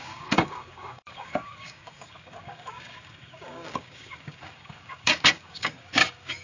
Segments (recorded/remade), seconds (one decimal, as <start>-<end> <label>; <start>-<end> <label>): 0.0-6.4 remade